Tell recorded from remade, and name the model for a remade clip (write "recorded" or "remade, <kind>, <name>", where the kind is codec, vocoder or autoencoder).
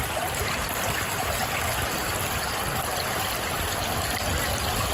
recorded